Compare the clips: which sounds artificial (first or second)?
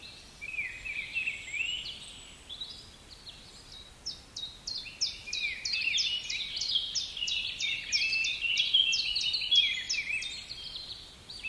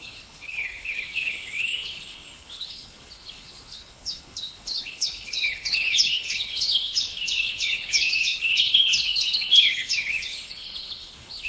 second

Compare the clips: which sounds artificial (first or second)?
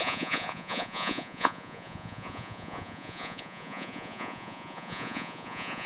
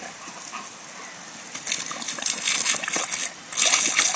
first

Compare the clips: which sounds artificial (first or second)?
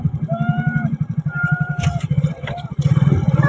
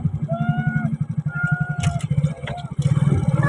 first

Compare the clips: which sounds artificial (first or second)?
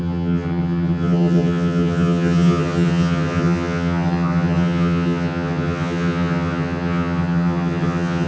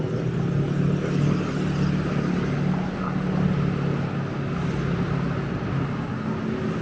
first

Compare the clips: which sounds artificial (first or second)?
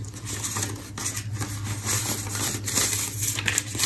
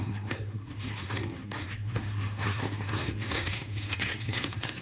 second